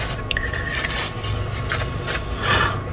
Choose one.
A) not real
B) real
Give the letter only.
B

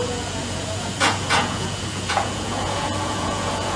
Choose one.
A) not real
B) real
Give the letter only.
A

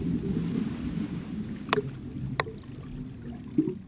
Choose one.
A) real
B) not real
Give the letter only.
A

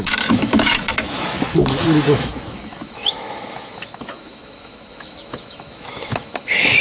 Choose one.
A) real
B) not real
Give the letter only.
B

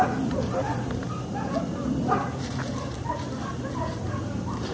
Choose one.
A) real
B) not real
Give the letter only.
B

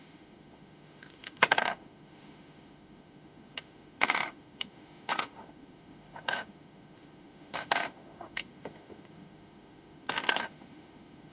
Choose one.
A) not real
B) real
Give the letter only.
A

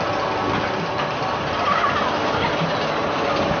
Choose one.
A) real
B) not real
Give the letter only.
A